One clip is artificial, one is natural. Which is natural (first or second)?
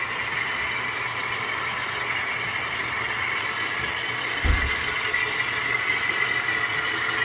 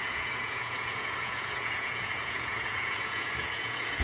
first